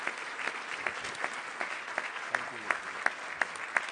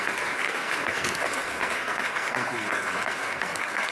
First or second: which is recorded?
first